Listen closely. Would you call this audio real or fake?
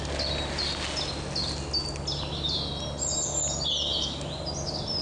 real